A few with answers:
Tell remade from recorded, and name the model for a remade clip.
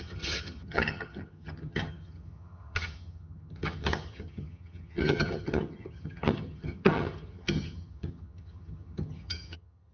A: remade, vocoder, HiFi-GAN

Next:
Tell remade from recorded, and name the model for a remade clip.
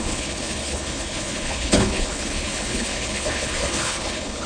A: remade, codec, HILCodec